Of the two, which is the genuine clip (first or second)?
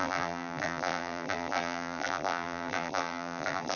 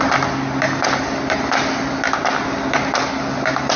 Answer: second